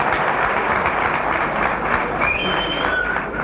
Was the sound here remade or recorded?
recorded